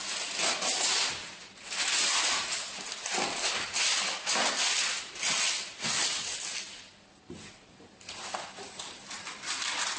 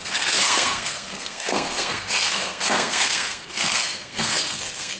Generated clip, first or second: second